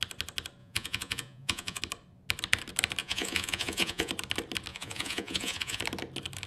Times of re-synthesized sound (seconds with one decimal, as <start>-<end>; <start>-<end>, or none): 0.6-1.8; 3.0-4.1; 4.7-5.8